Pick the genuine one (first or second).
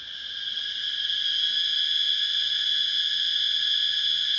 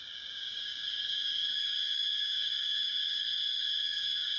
first